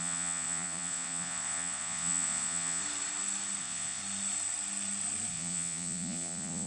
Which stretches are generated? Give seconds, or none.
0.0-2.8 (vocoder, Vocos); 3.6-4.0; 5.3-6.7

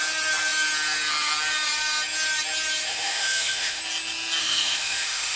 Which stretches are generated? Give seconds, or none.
2.9-3.8 (autoencoder, DAC-VAE); 4.4-5.4

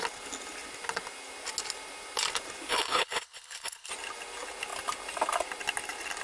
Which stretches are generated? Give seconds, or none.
2.7-3.9 (codec, HILCodec)

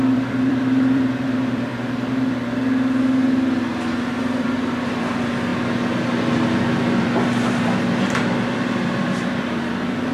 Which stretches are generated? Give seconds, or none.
0.0-1.7 (vocoder, BigVGAN v2); 4.2-5.5; 7.0-10.1

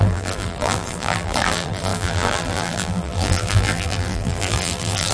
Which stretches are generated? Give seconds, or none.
0.0-5.1 (vocoder, BigVGAN v2)

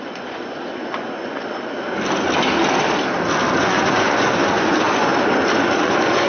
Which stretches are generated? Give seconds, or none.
0.0-1.4 (vocoder, Vocos); 3.6-5.1; 5.6-6.3